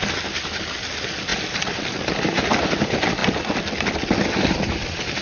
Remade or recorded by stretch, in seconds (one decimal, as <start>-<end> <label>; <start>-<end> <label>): 0.0-5.2 recorded